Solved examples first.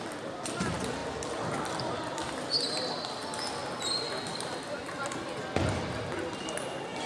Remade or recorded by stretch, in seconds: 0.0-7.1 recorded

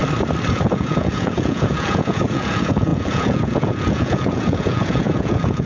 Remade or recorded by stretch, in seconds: 0.0-0.5 recorded; 0.5-5.7 remade

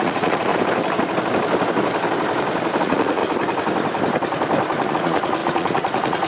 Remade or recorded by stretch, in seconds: 0.0-0.5 remade; 0.5-2.8 recorded; 2.8-3.2 remade; 3.2-4.9 recorded; 4.9-6.3 remade

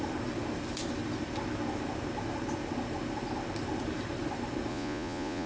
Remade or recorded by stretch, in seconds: 0.0-4.7 recorded; 4.7-5.5 remade

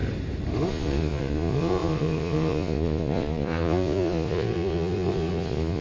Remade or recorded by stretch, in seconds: 0.0-0.7 recorded; 0.7-5.8 remade

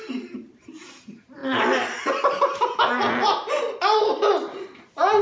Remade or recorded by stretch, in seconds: 0.0-5.2 recorded

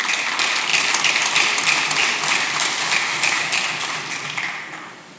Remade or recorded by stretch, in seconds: 0.0-5.2 recorded

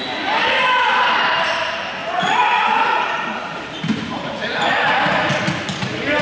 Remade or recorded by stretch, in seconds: 0.0-2.0 recorded; 2.0-4.9 remade; 4.9-6.2 recorded